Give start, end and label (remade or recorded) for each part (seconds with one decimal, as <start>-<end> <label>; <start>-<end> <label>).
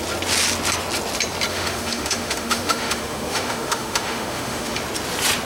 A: 0.0-1.5 recorded; 1.5-4.8 remade; 4.8-5.5 recorded